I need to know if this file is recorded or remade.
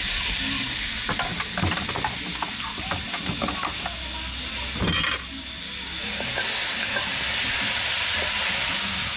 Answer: recorded